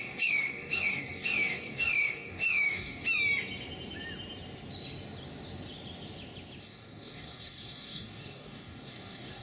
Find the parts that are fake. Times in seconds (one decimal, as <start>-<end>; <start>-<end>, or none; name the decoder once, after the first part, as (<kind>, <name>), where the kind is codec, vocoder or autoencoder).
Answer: 0.0-3.0 (codec, DAC); 6.6-9.4